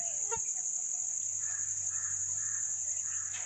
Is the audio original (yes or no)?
yes